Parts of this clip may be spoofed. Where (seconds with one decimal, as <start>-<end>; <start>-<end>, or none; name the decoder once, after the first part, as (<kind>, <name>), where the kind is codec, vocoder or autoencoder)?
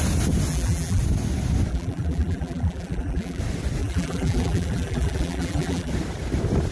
0.5-1.0 (vocoder, BigVGAN v2); 1.7-3.4; 3.8-5.9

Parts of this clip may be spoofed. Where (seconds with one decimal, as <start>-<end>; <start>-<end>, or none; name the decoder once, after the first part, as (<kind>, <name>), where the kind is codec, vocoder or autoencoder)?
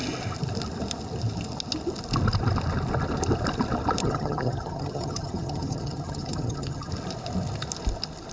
4.0-6.9 (vocoder, HiFi-GAN)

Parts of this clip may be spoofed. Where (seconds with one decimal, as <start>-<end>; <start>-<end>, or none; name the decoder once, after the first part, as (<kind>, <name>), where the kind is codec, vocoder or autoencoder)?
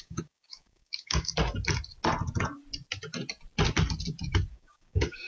0.0-1.3 (codec, DAC); 4.5-5.3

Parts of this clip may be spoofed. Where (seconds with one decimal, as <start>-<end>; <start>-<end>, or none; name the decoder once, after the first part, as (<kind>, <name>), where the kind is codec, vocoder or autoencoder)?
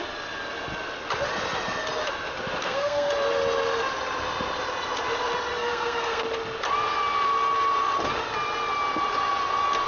2.6-3.1 (codec, SNAC); 5.5-6.2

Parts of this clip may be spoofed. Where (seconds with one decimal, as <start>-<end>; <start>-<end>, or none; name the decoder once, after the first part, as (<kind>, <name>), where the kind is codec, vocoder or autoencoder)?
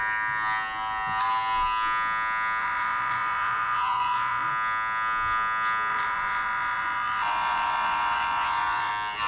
2.6-4.5 (vocoder, Vocos); 5.9-8.9